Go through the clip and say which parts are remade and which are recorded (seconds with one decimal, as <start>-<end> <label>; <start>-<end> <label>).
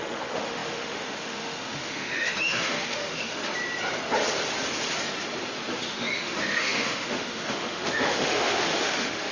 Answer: 0.0-3.4 remade; 3.4-5.8 recorded; 5.8-9.3 remade